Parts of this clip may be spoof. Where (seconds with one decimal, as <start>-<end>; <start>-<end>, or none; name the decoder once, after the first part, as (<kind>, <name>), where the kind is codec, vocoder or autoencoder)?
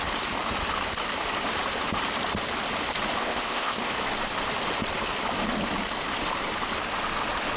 3.2-3.9 (codec, ZipCodec)